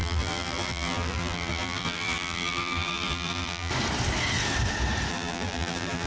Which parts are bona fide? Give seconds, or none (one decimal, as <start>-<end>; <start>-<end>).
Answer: 3.7-5.1